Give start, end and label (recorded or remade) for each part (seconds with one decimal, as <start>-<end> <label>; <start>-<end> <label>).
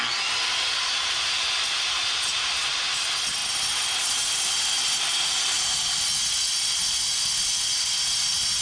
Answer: 0.0-8.6 recorded